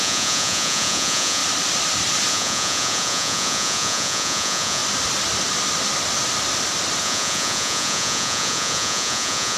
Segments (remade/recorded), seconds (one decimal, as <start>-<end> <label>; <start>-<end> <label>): 0.0-1.4 remade; 1.4-2.3 recorded; 2.3-4.8 remade; 4.8-7.0 recorded; 7.0-9.6 remade